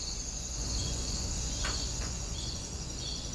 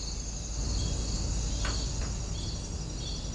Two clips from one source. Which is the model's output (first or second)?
first